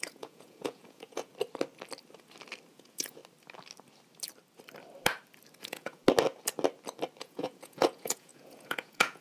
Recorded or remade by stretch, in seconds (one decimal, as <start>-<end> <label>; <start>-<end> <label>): 0.0-1.3 remade; 1.3-2.7 recorded; 2.7-3.2 remade; 3.2-5.6 recorded; 5.6-6.0 remade; 6.0-7.2 recorded; 7.2-9.2 remade